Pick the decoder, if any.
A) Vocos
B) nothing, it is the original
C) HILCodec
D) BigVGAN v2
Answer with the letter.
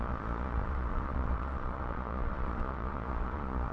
A